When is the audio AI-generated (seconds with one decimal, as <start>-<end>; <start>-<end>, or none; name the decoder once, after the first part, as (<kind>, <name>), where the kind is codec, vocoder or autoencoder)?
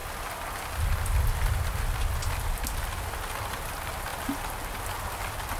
none